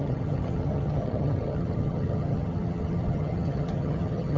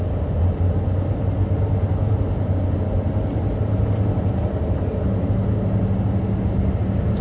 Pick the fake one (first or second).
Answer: first